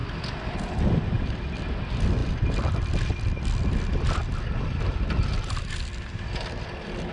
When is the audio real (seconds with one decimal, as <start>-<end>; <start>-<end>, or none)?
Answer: 0.0-7.1